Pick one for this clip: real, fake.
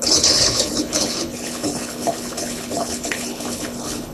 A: fake